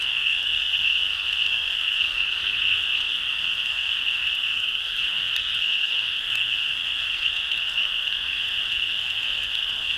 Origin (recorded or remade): remade